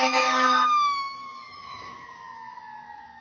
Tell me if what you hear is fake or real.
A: fake